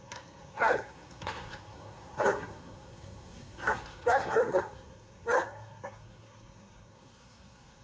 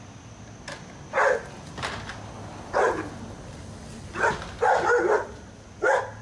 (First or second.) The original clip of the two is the second